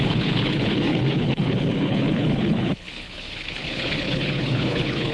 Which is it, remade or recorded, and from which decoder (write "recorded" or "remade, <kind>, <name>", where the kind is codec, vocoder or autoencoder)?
remade, codec, HILCodec